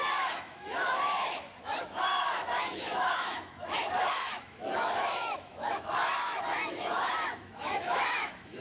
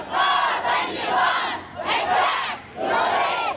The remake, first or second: first